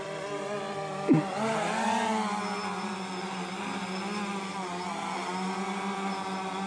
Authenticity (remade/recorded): recorded